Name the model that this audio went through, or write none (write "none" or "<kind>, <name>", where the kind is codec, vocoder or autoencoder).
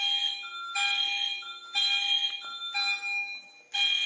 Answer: none